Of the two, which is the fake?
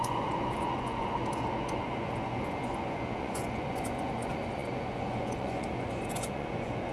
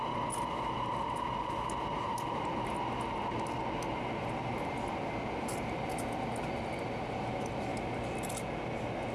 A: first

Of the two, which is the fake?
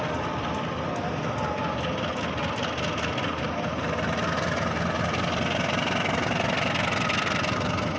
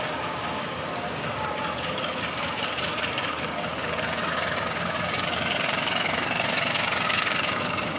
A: second